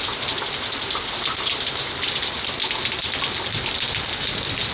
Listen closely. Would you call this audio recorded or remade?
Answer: recorded